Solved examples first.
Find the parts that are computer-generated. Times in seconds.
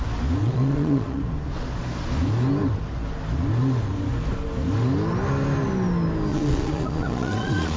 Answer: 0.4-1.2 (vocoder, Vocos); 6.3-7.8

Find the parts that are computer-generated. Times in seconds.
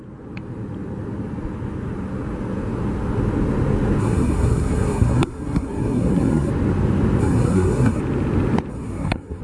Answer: 4.0-6.5 (codec, SNAC); 7.2-8.0; 8.7-9.4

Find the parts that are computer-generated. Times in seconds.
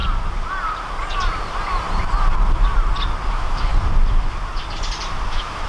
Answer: 3.3-3.7 (autoencoder, DAC-VAE); 5.3-5.7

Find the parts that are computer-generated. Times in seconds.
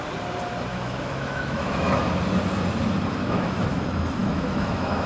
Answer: 0.7-2.0 (autoencoder, DAC-VAE); 3.2-3.8; 4.2-5.1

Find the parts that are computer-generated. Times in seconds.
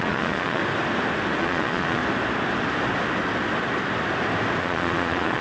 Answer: 0.0-0.6 (vocoder, Vocos); 1.4-2.0; 4.6-5.4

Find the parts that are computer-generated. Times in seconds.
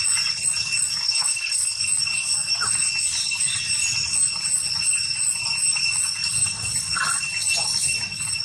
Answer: 1.0-1.8 (codec, HILCodec)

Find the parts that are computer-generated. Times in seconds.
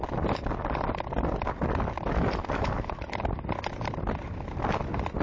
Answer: 2.4-3.2 (autoencoder, DAC-VAE)